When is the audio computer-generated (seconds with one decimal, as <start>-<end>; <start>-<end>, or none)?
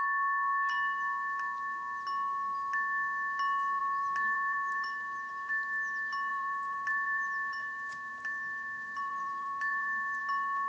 3.8-5.5; 6.3-10.2